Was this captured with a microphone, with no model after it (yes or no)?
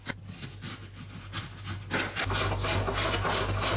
yes